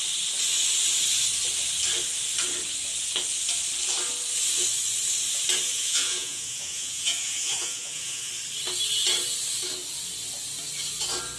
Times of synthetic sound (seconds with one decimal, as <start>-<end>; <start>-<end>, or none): 5.7-8.3